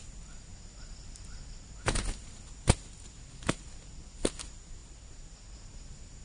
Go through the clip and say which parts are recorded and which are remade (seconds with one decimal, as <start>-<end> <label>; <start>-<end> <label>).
0.0-6.2 recorded